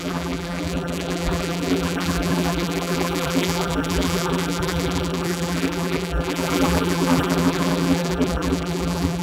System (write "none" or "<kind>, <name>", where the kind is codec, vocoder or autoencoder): vocoder, BigVGAN v2